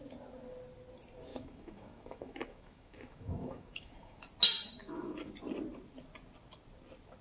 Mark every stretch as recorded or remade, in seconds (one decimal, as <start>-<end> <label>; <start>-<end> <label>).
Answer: 0.0-1.3 recorded; 1.3-4.2 remade; 4.2-4.8 recorded; 4.8-5.3 remade; 5.3-7.2 recorded